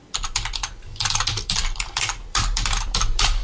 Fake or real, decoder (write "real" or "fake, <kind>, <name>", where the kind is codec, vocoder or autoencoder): fake, vocoder, BigVGAN v2